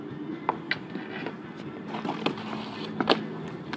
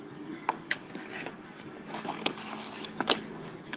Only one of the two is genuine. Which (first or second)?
first